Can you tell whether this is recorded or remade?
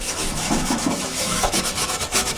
remade